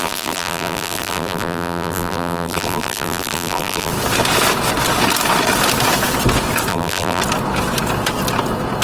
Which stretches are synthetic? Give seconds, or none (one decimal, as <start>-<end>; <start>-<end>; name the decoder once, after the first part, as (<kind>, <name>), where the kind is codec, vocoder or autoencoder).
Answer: 0.0-3.9 (vocoder, BigVGAN v2); 6.7-7.2